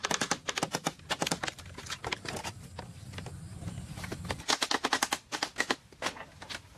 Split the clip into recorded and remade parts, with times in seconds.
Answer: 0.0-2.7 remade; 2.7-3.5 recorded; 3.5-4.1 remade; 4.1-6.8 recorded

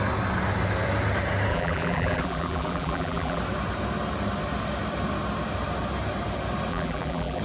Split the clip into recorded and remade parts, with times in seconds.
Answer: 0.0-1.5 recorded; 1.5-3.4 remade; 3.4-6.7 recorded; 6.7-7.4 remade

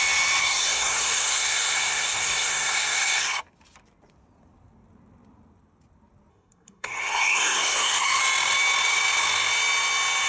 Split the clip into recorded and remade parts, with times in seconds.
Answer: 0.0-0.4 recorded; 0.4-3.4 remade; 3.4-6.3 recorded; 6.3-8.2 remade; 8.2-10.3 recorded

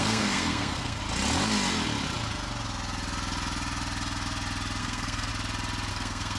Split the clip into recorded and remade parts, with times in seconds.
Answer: 0.0-1.0 remade; 1.0-4.8 recorded; 4.8-5.3 remade; 5.3-5.9 recorded; 5.9-6.4 remade

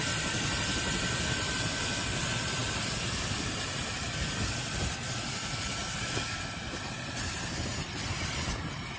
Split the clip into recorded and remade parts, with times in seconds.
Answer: 0.0-2.6 recorded; 2.6-7.5 remade; 7.5-9.0 recorded

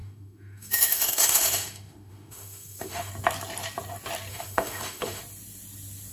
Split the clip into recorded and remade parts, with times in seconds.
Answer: 0.0-3.1 remade; 3.1-4.3 recorded; 4.3-5.2 remade; 5.2-6.1 recorded

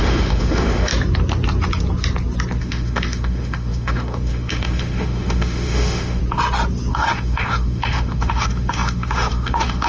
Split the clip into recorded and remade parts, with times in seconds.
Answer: 0.0-0.9 remade; 0.9-2.6 recorded; 2.6-6.2 remade; 6.2-6.9 recorded; 6.9-9.9 remade